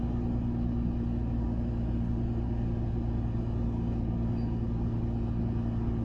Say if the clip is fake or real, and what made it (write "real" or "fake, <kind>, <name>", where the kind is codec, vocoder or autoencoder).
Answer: real